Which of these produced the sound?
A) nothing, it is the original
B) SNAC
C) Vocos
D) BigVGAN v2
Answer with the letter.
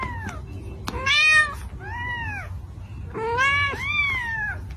A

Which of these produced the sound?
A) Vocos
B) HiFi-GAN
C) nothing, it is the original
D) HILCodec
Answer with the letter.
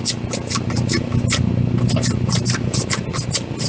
C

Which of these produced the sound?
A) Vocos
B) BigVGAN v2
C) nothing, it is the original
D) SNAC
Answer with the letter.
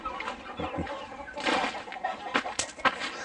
C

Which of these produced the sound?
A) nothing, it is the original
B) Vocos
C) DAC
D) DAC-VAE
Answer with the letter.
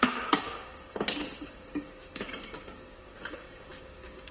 C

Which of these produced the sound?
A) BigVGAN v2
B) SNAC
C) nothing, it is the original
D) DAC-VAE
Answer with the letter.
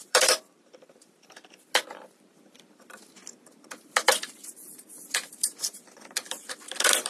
A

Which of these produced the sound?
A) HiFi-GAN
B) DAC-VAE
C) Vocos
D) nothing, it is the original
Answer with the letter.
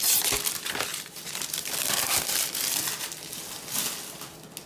D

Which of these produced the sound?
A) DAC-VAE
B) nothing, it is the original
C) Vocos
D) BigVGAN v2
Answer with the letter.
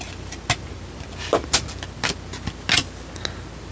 B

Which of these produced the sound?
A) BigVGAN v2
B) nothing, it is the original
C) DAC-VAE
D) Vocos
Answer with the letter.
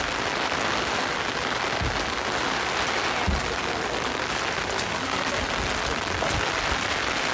B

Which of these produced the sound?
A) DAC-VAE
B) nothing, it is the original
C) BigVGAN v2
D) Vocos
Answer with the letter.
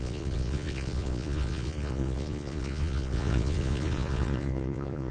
D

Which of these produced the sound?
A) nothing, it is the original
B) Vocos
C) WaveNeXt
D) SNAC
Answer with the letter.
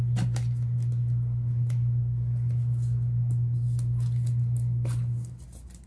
A